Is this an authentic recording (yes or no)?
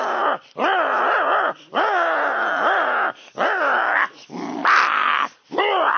yes